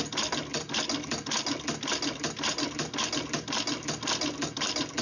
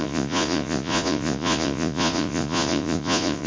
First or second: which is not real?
second